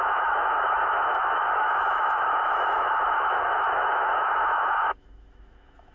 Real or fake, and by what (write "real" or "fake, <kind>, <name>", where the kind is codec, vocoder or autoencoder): fake, autoencoder, DAC-VAE